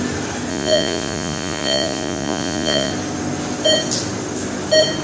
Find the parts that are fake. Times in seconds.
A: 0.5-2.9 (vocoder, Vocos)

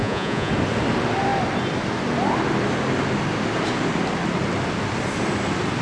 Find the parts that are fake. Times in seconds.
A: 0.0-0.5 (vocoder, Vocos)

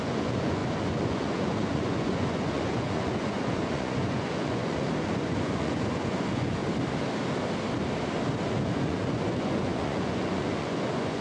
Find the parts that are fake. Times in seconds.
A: 0.0-6.6 (vocoder, Vocos); 8.4-11.2

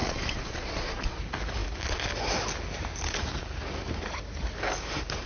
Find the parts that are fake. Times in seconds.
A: 0.0-1.2 (vocoder, Vocos)